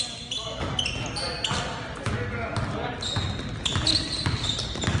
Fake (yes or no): no